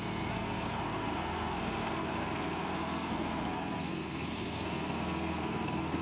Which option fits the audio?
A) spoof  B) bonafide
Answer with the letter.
A